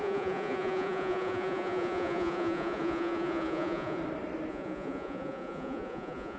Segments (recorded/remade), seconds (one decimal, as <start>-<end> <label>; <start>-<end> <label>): 0.0-4.0 remade; 4.0-4.5 recorded; 4.5-6.4 remade

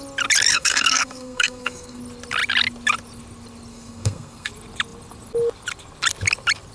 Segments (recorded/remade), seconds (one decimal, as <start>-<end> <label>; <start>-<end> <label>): 0.0-0.5 recorded; 0.5-2.0 remade; 2.0-3.7 recorded; 3.7-4.5 remade; 4.5-6.7 recorded

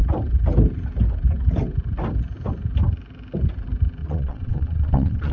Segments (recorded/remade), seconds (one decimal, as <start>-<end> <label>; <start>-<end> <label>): 0.0-4.0 recorded; 4.0-5.3 remade

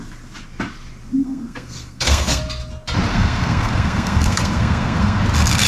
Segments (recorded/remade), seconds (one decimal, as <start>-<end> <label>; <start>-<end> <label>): 0.0-1.2 recorded; 1.2-2.4 remade; 2.4-3.1 recorded; 3.1-5.2 remade; 5.2-5.7 recorded

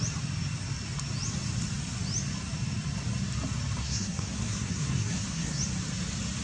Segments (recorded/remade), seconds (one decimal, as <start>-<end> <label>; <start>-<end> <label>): 0.0-3.8 recorded; 3.8-5.6 remade; 5.6-6.4 recorded